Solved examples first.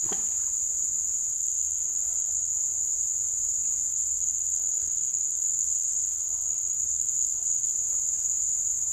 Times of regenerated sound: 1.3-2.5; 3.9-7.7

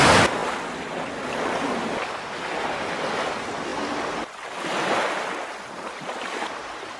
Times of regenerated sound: none

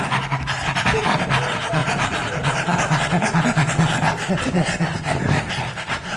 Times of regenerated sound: none

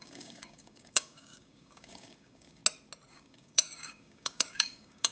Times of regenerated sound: 0.0-2.6; 3.1-5.1

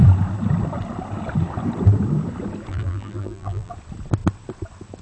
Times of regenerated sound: 2.7-3.7

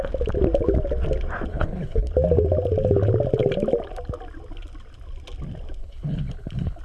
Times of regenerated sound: 1.5-2.1; 5.8-6.8

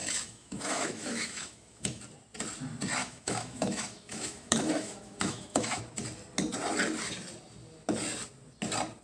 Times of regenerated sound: 0.0-2.0; 3.0-5.8